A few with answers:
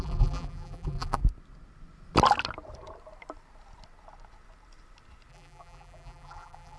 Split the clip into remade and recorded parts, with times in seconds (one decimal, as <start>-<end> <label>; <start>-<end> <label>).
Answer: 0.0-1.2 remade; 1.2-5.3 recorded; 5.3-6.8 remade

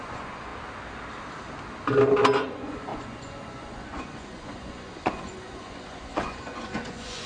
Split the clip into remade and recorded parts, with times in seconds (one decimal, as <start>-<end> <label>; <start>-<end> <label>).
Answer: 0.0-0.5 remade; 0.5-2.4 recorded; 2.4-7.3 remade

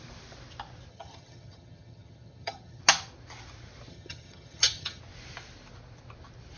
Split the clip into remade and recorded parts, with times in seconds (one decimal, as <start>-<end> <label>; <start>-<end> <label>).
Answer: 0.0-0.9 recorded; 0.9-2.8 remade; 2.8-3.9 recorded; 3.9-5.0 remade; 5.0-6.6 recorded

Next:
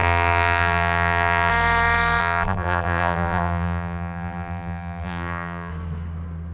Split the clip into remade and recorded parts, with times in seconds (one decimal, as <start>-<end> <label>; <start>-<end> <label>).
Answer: 0.0-1.5 remade; 1.5-2.2 recorded; 2.2-5.7 remade; 5.7-6.5 recorded

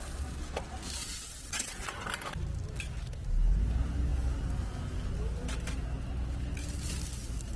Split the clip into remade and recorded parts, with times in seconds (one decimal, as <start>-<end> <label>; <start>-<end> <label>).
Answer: 0.0-1.0 recorded; 1.0-1.9 remade; 1.9-7.6 recorded